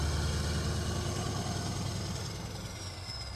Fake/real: real